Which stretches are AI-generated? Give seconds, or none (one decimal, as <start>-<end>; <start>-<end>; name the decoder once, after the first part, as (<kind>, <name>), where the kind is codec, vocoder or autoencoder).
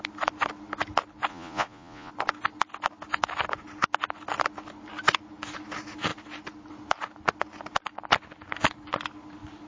1.3-2.1 (vocoder, Vocos)